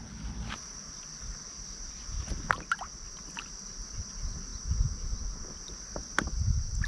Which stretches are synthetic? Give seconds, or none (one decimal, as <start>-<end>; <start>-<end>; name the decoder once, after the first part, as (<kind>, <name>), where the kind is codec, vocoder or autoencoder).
none